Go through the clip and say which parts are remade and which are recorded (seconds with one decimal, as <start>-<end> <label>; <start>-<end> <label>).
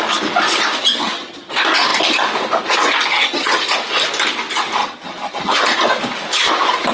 0.0-0.8 recorded; 0.8-1.5 remade; 1.5-3.1 recorded; 3.1-3.6 remade; 3.6-4.8 recorded; 4.8-5.6 remade; 5.6-6.9 recorded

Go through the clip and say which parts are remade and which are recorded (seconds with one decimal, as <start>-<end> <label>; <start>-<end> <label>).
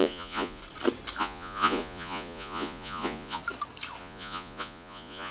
0.0-0.6 remade; 0.6-1.2 recorded; 1.2-3.4 remade; 3.4-4.0 recorded; 4.0-5.3 remade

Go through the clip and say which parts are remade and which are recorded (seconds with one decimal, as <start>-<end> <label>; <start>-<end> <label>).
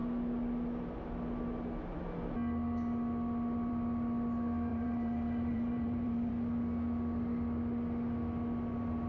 0.0-4.7 recorded; 4.7-6.3 remade; 6.3-9.1 recorded